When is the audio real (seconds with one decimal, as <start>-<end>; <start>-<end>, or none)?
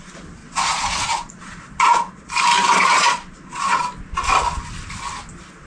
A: 0.0-0.4; 2.3-2.7; 3.8-5.7